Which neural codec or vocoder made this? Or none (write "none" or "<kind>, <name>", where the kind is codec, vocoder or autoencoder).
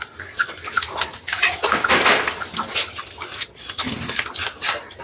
none